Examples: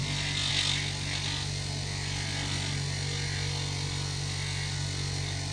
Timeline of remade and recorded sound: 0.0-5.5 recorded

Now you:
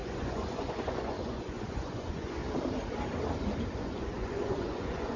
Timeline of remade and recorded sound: 0.0-2.4 remade; 2.4-3.8 recorded; 3.8-5.2 remade

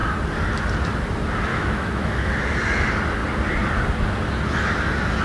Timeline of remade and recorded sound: 0.0-1.5 recorded; 1.5-2.3 remade; 2.3-5.2 recorded

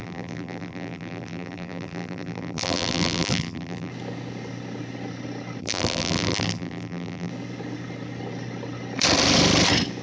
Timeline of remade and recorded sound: 0.0-3.9 remade; 3.9-5.6 recorded; 5.6-7.3 remade; 7.3-10.0 recorded

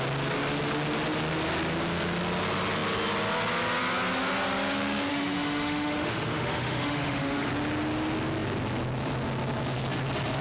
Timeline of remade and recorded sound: 0.0-5.1 recorded; 5.1-7.5 remade; 7.5-10.4 recorded

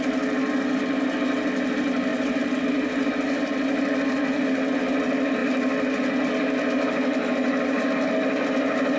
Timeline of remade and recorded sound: 0.0-2.1 recorded; 2.1-3.1 remade; 3.1-9.0 recorded